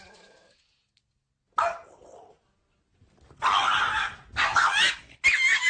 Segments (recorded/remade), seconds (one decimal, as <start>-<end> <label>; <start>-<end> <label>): 0.0-5.7 recorded